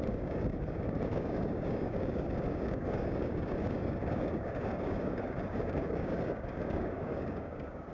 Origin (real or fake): fake